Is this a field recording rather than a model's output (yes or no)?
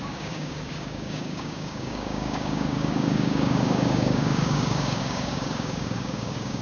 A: no